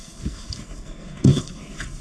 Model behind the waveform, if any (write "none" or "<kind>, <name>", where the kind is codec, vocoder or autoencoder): codec, SNAC